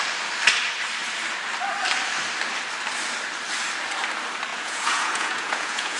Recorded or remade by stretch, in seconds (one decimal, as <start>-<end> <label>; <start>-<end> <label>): 0.0-4.5 recorded; 4.5-6.0 remade